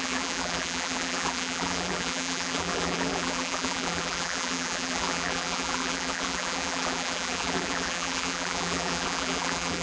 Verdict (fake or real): fake